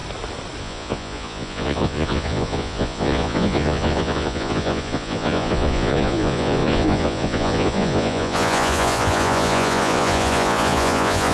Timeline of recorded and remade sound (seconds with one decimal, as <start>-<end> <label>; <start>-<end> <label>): 0.0-0.6 recorded; 0.6-11.3 remade